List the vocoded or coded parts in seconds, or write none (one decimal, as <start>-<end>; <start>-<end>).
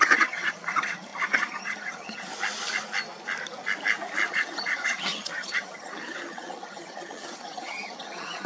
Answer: 0.0-2.3; 4.3-8.5